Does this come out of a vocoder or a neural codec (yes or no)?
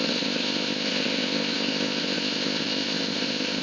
yes